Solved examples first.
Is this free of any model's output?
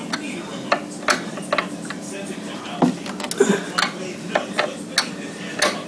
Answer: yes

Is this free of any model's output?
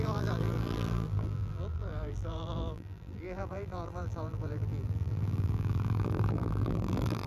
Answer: no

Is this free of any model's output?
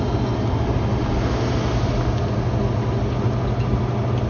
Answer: yes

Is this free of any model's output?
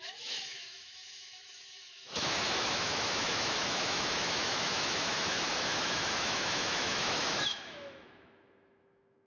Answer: no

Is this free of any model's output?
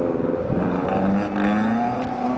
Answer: yes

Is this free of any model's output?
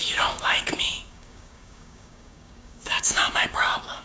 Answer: no